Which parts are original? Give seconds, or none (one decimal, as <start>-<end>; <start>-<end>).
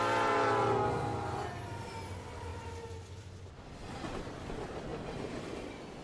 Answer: 0.0-6.0